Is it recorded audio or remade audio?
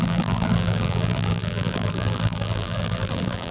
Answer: remade